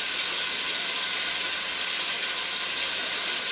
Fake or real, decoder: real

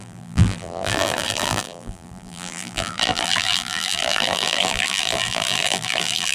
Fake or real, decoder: fake, vocoder, BigVGAN v2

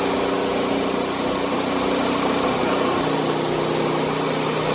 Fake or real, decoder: real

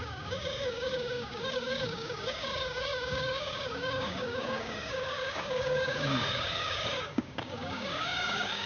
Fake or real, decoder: fake, codec, DAC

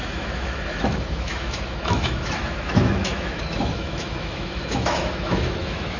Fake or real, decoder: fake, autoencoder, DAC-VAE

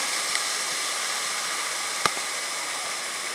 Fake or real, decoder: real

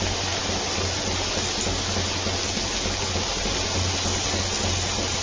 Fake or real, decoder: real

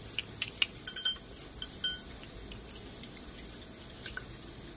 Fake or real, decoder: real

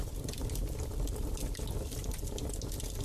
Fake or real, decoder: real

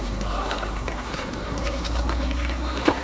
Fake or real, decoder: fake, codec, SNAC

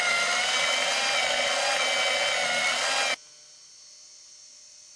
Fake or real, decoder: real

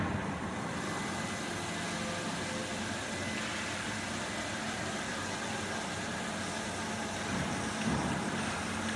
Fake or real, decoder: real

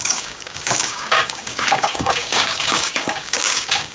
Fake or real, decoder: fake, codec, DAC